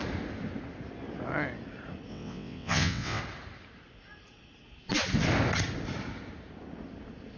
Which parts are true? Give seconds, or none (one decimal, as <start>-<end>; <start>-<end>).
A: 0.0-2.1; 3.2-7.4